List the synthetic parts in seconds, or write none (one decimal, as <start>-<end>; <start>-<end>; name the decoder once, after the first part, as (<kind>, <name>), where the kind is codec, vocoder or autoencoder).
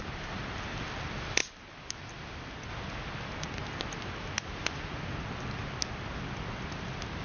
none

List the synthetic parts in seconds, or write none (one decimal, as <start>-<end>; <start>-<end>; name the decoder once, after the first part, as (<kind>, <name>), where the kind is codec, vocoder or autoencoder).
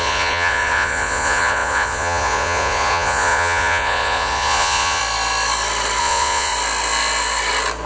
0.0-5.0 (vocoder, Vocos); 6.0-6.5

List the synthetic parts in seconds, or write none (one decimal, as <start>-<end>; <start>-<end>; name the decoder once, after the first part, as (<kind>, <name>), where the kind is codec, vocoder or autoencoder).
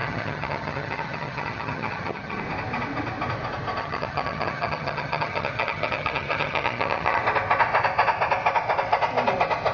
0.0-2.4 (vocoder, HiFi-GAN); 3.8-7.2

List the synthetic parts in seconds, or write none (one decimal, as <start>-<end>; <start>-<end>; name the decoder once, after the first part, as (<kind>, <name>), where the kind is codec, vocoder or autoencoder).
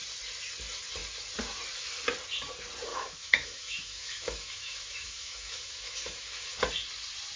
2.9-6.6 (autoencoder, DAC-VAE)